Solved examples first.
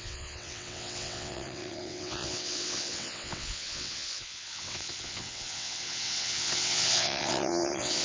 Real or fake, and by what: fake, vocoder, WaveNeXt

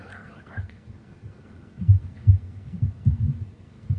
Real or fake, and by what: fake, codec, SNAC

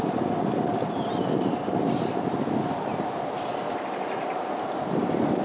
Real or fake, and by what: real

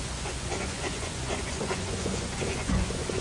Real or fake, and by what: fake, vocoder, Vocos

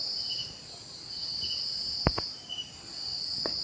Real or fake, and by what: real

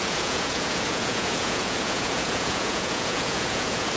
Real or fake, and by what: fake, vocoder, Vocos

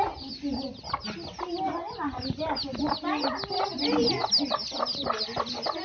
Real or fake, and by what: real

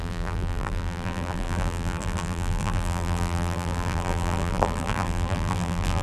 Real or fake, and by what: fake, vocoder, BigVGAN v2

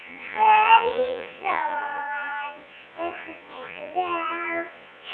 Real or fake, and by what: fake, vocoder, Vocos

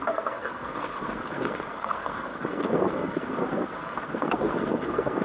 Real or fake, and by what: fake, codec, SNAC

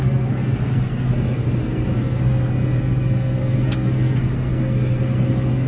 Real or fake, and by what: fake, codec, SNAC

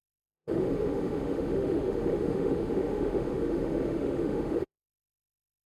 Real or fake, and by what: fake, autoencoder, DAC-VAE